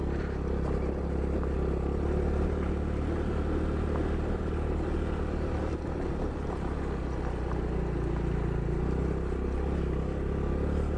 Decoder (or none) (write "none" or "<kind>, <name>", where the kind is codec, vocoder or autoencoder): none